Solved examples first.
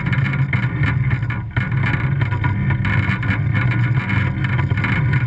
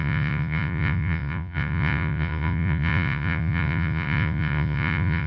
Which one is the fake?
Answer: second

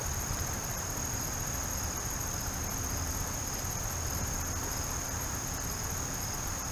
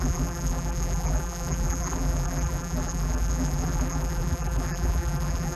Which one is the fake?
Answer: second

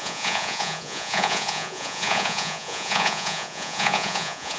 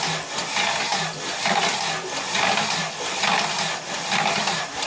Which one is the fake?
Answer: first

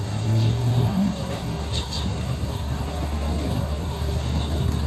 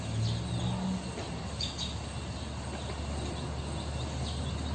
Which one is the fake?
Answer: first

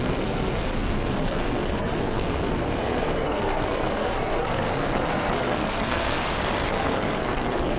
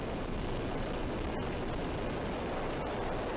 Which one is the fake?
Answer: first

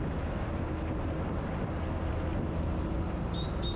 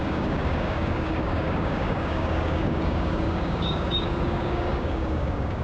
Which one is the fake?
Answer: second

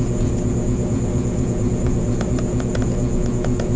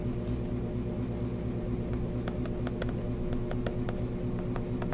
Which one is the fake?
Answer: first